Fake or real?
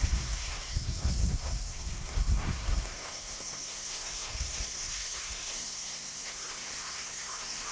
fake